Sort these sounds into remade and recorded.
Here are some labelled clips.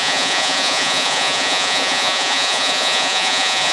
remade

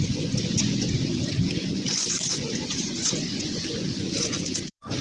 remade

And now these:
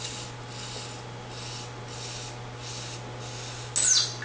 recorded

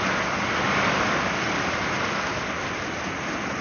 recorded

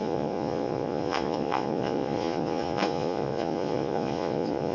remade